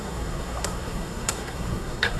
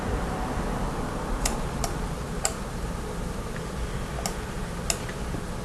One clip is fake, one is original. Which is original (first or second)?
second